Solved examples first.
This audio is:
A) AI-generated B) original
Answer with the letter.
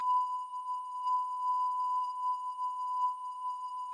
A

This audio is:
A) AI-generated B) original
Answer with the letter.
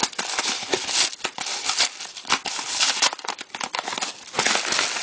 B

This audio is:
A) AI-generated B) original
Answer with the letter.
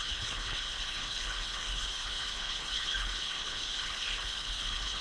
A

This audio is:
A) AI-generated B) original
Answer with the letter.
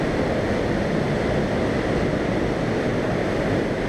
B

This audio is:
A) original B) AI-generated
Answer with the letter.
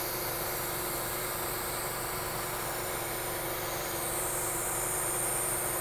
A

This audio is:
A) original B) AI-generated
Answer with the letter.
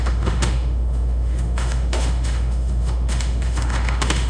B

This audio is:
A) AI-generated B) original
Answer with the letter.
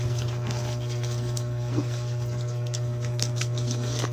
A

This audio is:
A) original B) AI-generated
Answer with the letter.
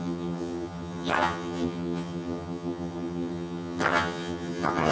B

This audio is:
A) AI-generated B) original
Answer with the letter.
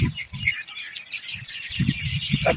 B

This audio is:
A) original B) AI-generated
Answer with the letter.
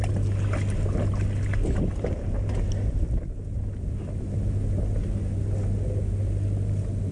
A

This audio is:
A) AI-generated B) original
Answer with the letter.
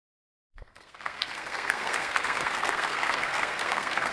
A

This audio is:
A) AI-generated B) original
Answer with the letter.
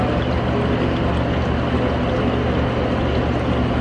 B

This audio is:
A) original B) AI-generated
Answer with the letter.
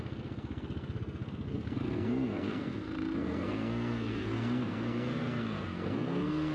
B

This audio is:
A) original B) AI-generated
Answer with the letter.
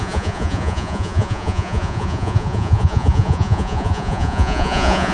B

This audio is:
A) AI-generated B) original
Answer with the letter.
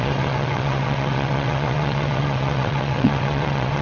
A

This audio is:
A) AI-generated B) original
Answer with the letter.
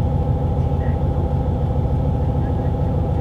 B